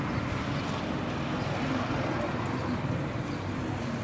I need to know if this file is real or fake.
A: real